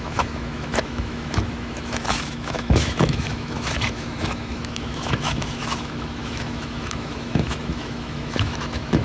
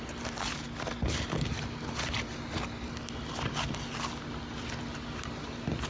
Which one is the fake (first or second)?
first